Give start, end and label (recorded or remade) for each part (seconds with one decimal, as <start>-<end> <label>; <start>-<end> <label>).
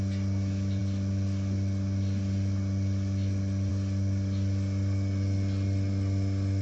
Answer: 0.0-6.6 recorded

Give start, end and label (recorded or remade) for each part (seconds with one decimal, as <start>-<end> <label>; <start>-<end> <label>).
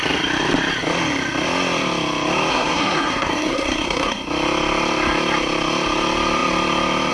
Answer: 0.0-2.5 recorded; 2.5-4.2 remade; 4.2-7.1 recorded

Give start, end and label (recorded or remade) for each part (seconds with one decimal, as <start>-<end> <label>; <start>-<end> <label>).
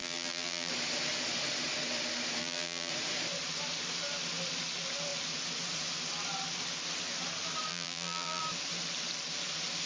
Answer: 0.0-0.7 remade; 0.7-2.4 recorded; 2.4-2.9 remade; 2.9-7.7 recorded; 7.7-8.4 remade; 8.4-9.9 recorded